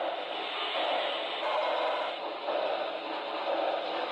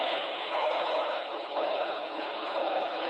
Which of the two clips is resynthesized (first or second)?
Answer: second